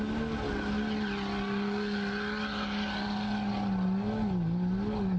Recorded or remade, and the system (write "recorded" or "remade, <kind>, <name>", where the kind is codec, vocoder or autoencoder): recorded